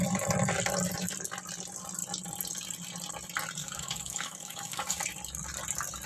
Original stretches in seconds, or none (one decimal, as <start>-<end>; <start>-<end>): 0.0-3.6; 5.0-6.1